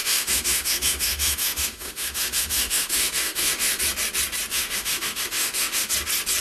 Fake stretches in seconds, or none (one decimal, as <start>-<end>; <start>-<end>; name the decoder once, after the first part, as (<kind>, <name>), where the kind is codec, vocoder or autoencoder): 0.0-3.8 (autoencoder, DAC-VAE); 4.5-5.9